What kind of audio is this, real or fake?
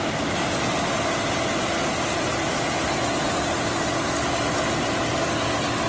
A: real